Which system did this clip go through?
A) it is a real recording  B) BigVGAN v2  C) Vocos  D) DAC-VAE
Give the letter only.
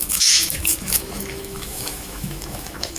D